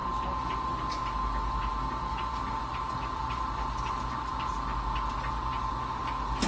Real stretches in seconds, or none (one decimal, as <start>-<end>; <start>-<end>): 0.0-6.5